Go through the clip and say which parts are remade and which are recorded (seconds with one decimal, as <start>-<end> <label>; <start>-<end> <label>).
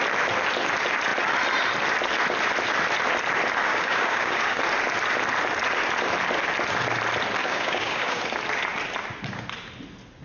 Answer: 0.0-3.7 recorded; 3.7-4.6 remade; 4.6-7.4 recorded; 7.4-8.2 remade; 8.2-10.2 recorded